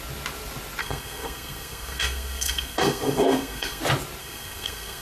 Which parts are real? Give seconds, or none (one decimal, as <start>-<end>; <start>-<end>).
0.0-0.8; 3.8-4.2